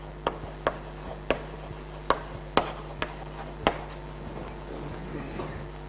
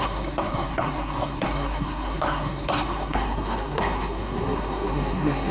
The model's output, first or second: second